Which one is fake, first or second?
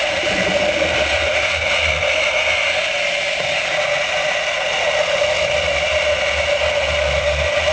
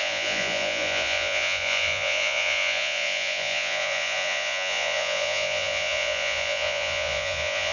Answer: second